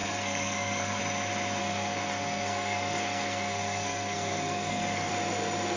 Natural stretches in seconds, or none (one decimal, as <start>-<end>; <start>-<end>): 1.0-1.6; 5.1-5.8